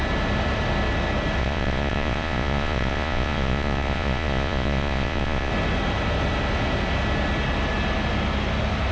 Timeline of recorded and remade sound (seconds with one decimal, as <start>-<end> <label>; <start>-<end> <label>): 0.0-1.4 recorded; 1.4-5.5 remade; 5.5-8.9 recorded